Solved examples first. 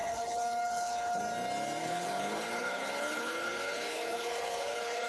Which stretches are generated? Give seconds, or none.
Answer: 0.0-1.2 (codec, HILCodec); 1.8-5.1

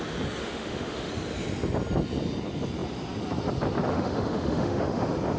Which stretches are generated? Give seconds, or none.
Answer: 0.4-1.1 (autoencoder, DAC-VAE); 3.9-5.0

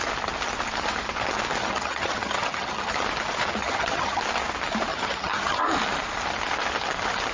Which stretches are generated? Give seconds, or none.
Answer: 1.6-2.9 (vocoder, HiFi-GAN); 3.6-4.2; 4.9-5.6

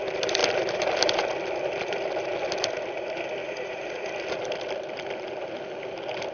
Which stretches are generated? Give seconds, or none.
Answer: 3.4-4.1 (vocoder, Vocos)

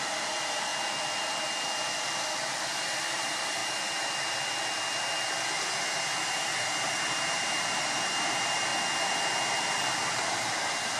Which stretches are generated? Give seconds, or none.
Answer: 0.0-0.7 (vocoder, BigVGAN v2); 2.4-3.6; 6.2-8.7; 9.5-11.0

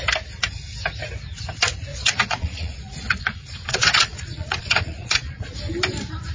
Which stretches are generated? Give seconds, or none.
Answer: 1.9-5.7 (vocoder, Vocos)

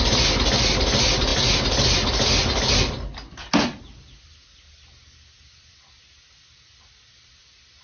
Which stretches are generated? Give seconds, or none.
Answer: none